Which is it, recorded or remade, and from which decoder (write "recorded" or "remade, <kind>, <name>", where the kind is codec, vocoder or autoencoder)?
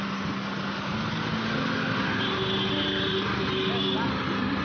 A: recorded